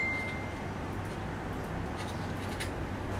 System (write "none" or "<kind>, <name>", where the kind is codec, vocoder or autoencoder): none